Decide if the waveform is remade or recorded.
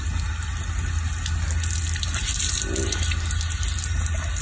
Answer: recorded